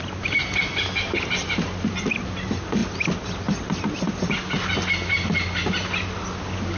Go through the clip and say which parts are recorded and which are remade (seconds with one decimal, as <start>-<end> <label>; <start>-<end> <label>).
0.0-6.8 recorded